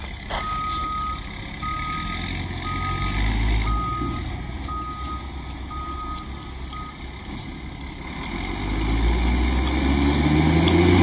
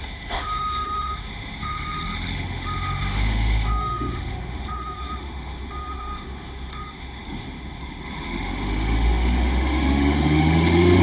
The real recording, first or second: first